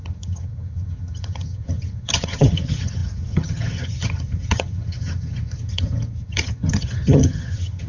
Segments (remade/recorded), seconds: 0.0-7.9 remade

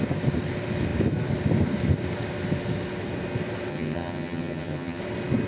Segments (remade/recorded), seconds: 0.0-3.7 recorded; 3.7-5.0 remade; 5.0-5.5 recorded

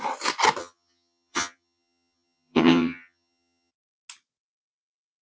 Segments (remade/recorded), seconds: 0.0-0.6 recorded; 0.6-3.7 remade; 3.7-5.2 recorded

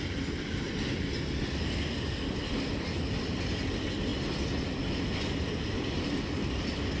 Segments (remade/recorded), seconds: 0.0-7.0 recorded

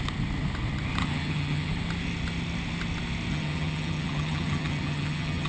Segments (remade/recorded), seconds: 0.0-1.0 recorded; 1.0-1.7 remade; 1.7-3.3 recorded; 3.3-5.5 remade

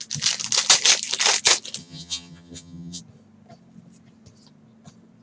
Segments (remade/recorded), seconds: 0.0-1.8 recorded; 1.8-3.0 remade; 3.0-5.2 recorded

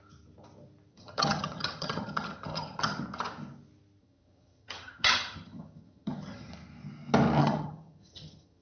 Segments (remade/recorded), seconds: 0.0-0.9 recorded; 0.9-3.0 remade; 3.0-4.0 recorded; 4.0-6.5 remade; 6.5-7.4 recorded; 7.4-8.6 remade